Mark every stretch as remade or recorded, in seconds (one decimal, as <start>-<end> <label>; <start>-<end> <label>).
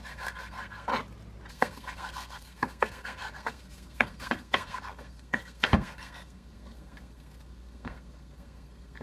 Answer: 0.0-0.9 remade; 0.9-1.5 recorded; 1.5-9.0 remade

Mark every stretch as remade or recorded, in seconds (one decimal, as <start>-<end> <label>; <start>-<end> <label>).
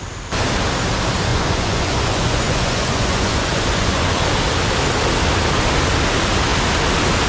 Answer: 0.0-1.3 recorded; 1.3-4.2 remade; 4.2-7.3 recorded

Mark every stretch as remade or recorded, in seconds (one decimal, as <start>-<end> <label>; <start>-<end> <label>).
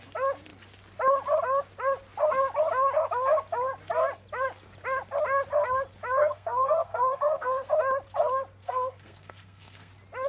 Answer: 0.0-6.2 recorded; 6.2-7.7 remade; 7.7-8.6 recorded; 8.6-9.9 remade; 9.9-10.3 recorded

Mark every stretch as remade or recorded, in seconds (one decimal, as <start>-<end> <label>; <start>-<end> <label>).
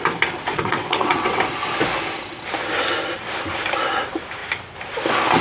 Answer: 0.0-0.5 recorded; 0.5-1.4 remade; 1.4-5.4 recorded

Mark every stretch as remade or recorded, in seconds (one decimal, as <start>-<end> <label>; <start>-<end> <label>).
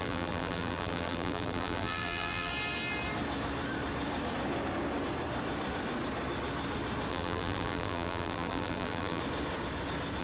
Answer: 0.0-2.5 remade; 2.5-7.1 recorded; 7.1-9.2 remade; 9.2-10.2 recorded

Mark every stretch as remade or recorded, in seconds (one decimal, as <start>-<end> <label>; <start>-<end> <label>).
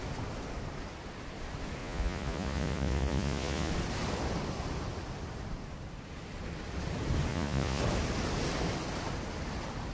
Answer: 0.0-1.8 recorded; 1.8-3.7 remade; 3.7-7.3 recorded; 7.3-7.8 remade; 7.8-9.9 recorded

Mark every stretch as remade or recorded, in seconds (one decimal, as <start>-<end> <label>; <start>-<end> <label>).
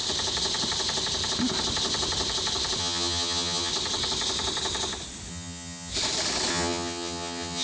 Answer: 0.0-2.8 recorded; 2.8-3.7 remade; 3.7-5.3 recorded; 5.3-5.9 remade; 5.9-6.5 recorded; 6.5-7.6 remade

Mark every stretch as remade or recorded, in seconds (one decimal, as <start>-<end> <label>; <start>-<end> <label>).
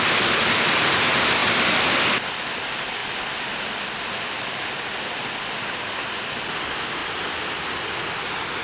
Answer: 0.0-8.6 recorded